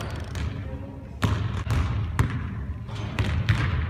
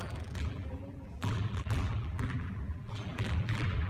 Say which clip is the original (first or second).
first